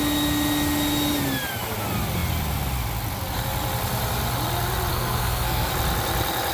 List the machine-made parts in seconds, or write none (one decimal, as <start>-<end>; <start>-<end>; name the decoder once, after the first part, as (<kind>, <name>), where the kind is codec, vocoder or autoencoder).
4.9-5.7 (codec, SNAC)